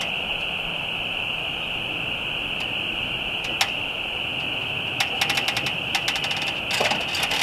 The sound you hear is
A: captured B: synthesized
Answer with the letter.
A